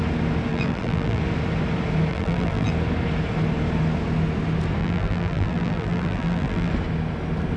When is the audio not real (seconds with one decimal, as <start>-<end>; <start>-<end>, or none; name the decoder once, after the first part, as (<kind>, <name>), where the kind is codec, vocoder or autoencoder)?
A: 0.5-1.2 (vocoder, BigVGAN v2); 2.1-2.7; 4.8-6.7